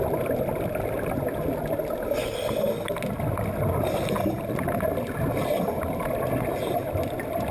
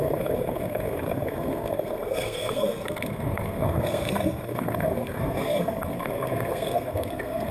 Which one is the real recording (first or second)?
first